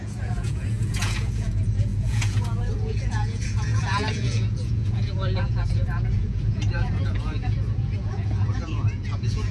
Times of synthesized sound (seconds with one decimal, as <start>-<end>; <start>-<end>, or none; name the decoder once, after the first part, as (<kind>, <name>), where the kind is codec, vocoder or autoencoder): 0.0-9.5 (vocoder, Vocos)